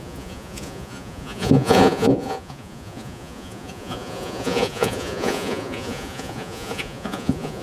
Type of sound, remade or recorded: remade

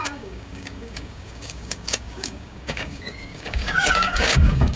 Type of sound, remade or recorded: remade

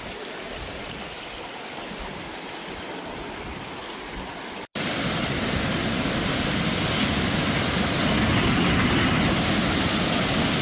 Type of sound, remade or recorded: recorded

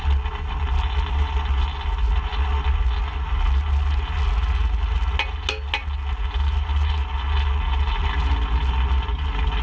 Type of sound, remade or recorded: recorded